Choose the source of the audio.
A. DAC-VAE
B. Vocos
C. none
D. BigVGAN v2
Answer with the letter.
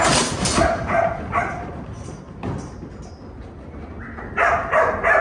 C